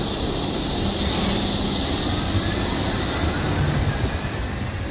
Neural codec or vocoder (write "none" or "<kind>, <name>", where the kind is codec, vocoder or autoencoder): none